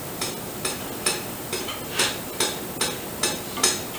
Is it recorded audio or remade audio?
recorded